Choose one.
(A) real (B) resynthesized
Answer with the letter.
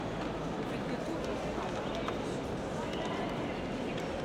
A